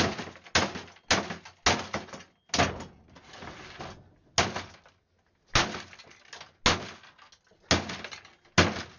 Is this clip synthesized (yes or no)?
no